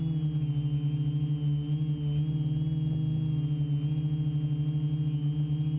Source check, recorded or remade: recorded